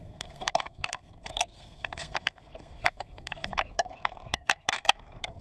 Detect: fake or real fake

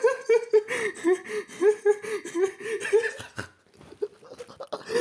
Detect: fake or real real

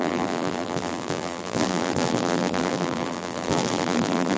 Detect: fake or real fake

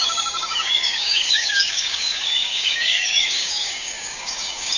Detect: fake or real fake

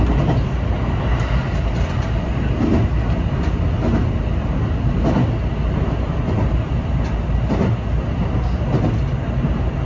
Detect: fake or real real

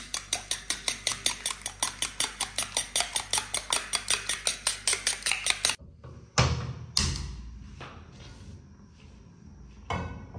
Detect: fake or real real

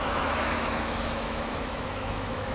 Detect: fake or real fake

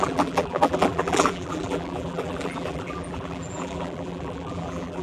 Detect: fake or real fake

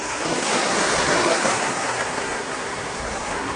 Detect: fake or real fake